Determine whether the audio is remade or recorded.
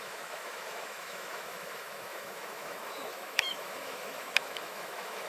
remade